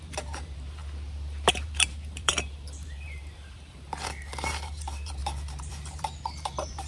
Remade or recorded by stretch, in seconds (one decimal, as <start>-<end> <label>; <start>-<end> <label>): 0.0-0.8 remade; 0.8-1.5 recorded; 1.5-6.9 remade